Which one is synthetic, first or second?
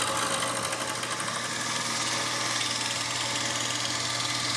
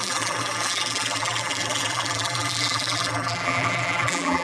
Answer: second